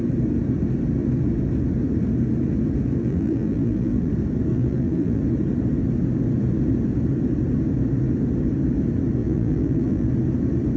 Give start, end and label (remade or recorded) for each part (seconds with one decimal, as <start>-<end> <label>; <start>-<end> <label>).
0.0-3.0 recorded; 3.0-4.1 remade; 4.1-4.5 recorded; 4.5-5.2 remade; 5.2-9.2 recorded; 9.2-10.1 remade; 10.1-10.8 recorded